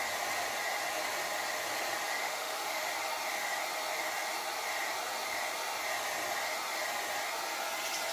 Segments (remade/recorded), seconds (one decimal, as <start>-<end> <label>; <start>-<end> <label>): 0.0-2.2 recorded; 2.2-2.9 remade; 2.9-8.1 recorded